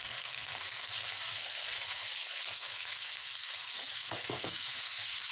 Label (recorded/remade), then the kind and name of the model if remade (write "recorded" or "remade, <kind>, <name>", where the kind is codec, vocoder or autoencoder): remade, codec, SNAC